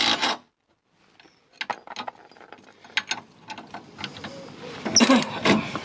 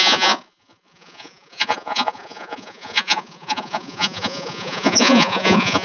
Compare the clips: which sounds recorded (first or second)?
first